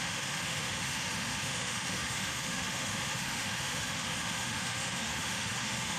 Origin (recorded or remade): remade